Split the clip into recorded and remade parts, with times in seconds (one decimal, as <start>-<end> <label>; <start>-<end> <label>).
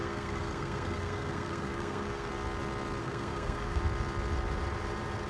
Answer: 0.0-2.3 remade; 2.3-3.0 recorded; 3.0-3.8 remade; 3.8-5.3 recorded